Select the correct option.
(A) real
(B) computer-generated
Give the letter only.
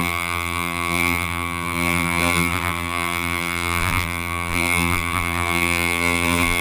B